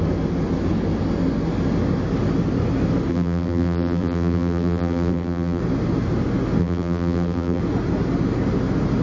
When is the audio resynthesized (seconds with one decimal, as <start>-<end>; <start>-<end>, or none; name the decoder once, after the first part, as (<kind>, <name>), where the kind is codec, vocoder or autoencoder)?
3.1-5.6 (vocoder, BigVGAN v2); 6.6-7.6